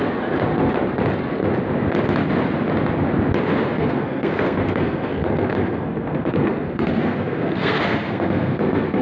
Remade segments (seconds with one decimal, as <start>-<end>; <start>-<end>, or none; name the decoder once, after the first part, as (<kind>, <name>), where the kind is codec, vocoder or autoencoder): 3.7-9.0 (codec, SNAC)